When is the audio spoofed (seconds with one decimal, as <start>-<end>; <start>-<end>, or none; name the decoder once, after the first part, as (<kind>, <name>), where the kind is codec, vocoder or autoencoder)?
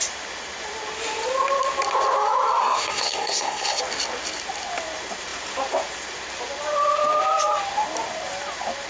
2.6-3.8 (codec, SNAC)